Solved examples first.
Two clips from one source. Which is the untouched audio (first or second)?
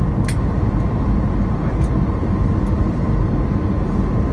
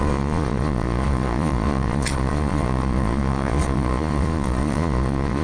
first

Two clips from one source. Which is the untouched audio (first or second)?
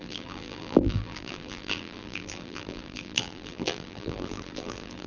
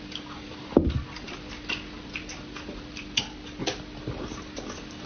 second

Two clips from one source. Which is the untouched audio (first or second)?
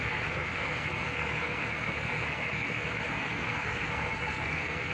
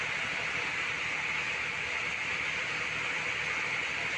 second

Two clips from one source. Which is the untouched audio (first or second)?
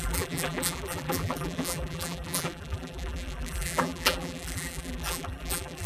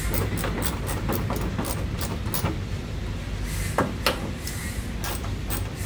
second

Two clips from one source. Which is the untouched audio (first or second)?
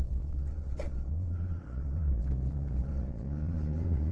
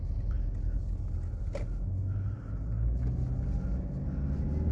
second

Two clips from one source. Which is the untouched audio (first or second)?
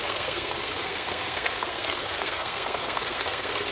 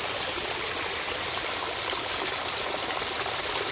second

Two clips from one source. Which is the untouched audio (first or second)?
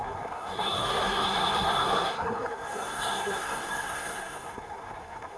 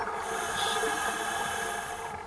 second